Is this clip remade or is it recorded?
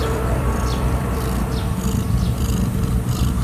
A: remade